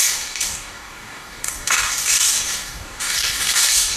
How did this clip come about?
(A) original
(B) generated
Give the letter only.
B